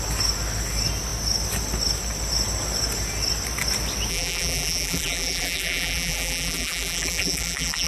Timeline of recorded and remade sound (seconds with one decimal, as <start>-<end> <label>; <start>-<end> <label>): 0.0-4.1 recorded; 4.1-7.9 remade